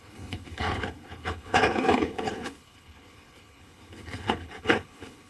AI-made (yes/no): yes